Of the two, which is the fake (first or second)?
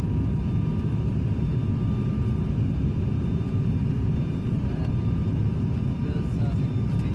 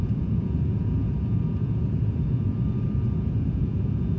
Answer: second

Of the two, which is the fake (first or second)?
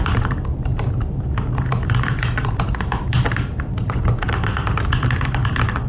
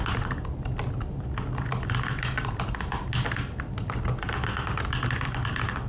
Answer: first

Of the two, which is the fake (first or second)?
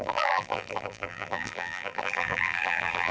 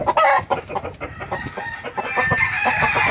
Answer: first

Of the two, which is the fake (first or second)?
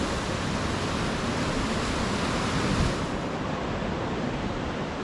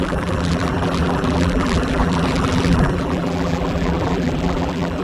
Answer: second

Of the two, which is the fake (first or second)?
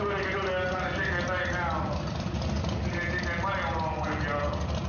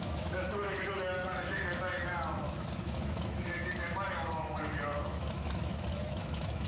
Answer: second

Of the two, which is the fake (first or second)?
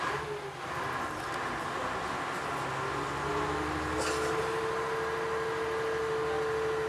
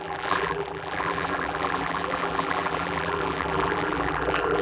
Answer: second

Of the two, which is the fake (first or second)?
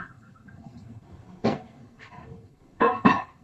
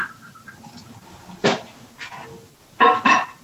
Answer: first